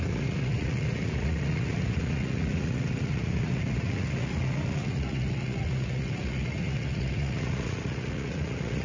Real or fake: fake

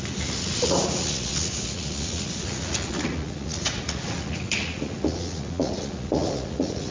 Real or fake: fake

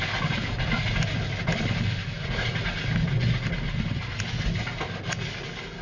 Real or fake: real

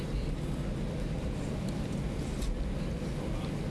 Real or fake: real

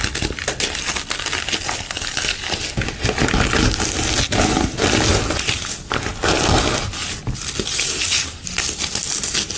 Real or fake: real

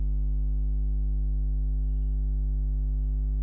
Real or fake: real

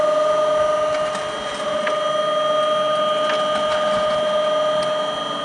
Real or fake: real